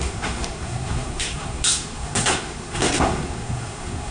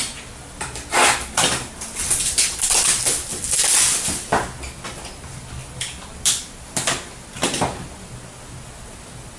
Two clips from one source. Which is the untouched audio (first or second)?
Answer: second